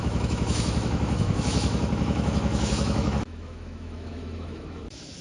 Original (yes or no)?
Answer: no